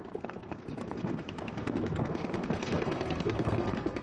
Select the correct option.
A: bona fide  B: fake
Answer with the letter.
B